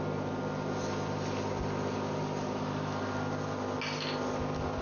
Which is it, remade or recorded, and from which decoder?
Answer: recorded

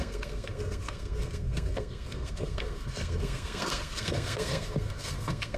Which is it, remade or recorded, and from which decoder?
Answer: remade, codec, SNAC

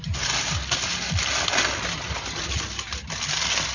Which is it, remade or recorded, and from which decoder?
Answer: recorded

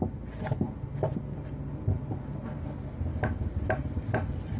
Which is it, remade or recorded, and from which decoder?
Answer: recorded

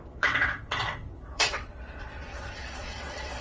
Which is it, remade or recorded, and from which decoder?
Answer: remade, vocoder, WaveNeXt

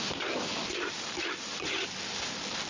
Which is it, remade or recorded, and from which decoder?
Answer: recorded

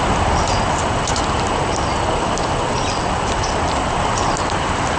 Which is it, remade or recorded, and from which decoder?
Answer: recorded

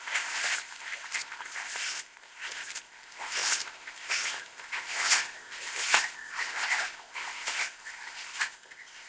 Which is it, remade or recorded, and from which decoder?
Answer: remade, codec, ZipCodec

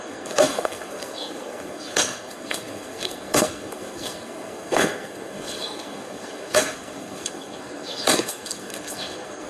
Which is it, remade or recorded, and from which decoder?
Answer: remade, codec, SNAC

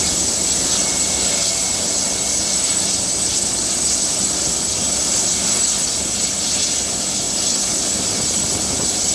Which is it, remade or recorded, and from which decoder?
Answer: recorded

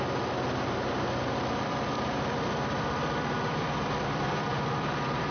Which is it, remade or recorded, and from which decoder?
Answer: remade, vocoder, BigVGAN v2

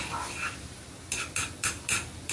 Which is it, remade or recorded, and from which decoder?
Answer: recorded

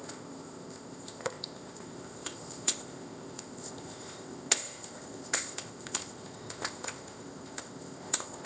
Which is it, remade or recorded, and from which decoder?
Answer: remade, codec, ZipCodec